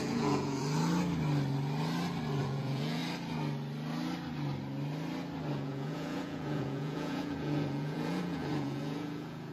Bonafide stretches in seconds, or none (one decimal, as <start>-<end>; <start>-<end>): 0.6-2.4; 3.0-5.5